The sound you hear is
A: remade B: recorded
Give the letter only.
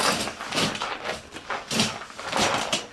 B